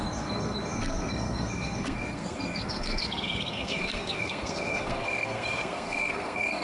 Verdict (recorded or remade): remade